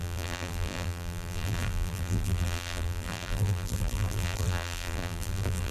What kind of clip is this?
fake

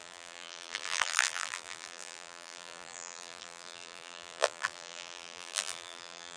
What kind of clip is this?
fake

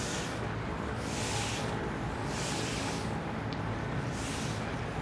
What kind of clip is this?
real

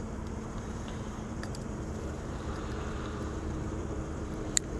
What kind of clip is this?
fake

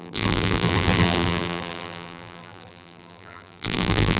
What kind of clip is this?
fake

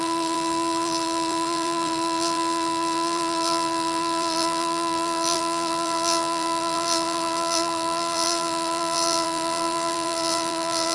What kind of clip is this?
fake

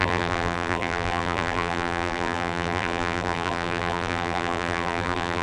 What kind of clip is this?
fake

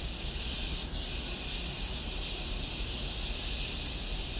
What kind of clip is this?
real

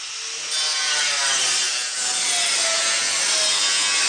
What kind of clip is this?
real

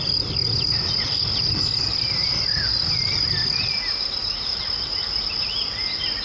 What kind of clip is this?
real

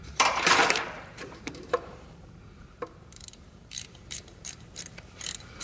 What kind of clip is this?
fake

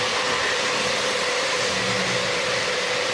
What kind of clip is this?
fake